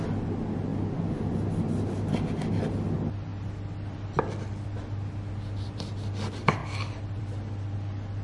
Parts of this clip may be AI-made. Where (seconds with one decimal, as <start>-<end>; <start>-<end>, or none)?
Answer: 6.6-7.2